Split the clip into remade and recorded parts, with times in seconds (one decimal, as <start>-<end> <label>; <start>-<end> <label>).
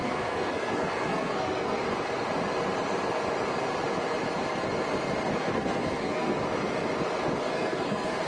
0.0-1.8 remade; 1.8-5.3 recorded; 5.3-6.4 remade; 6.4-7.4 recorded; 7.4-8.3 remade